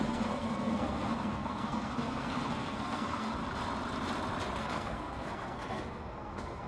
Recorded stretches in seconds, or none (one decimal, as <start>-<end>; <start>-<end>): 3.4-4.6